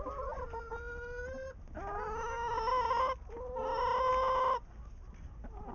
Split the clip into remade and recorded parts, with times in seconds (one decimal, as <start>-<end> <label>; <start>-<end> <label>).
0.0-5.7 recorded